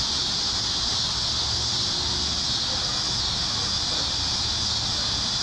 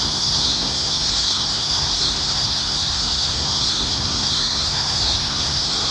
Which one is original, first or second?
first